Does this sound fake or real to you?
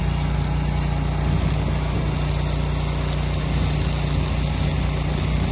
real